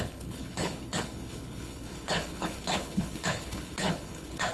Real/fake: fake